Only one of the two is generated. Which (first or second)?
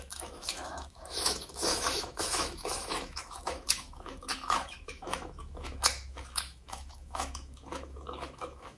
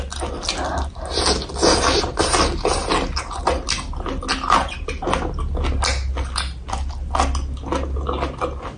first